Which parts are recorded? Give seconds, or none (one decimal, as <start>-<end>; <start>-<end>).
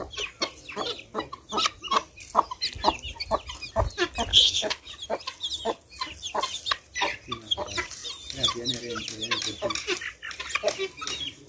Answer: 0.0-4.3; 4.9-11.5